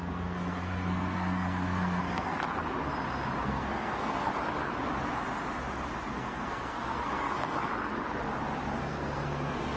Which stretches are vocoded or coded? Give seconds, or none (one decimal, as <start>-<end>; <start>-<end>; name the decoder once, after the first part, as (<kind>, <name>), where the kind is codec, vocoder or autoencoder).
0.0-2.4 (codec, SNAC); 3.4-4.3; 6.1-7.7; 8.8-9.8